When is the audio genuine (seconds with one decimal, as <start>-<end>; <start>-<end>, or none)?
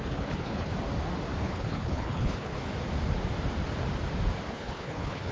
0.7-1.4; 2.6-4.5